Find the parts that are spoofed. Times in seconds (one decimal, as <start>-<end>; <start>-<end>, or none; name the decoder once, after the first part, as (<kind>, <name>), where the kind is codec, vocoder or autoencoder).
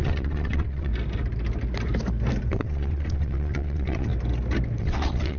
0.0-0.9 (vocoder, WaveNeXt); 2.5-4.1; 4.8-5.4